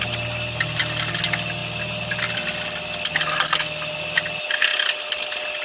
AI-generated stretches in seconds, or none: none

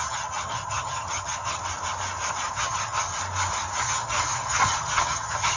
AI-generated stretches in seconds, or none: 0.0-1.6; 2.5-3.1; 3.8-5.6

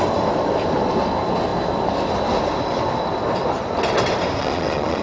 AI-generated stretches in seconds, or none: 4.4-5.0

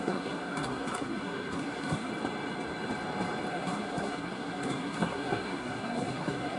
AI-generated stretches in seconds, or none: 0.0-2.1; 3.5-6.6

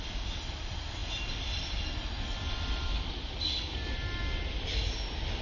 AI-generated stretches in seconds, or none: none

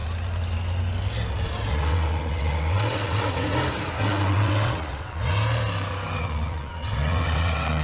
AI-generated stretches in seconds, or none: 1.7-3.5; 4.0-5.2; 6.2-7.8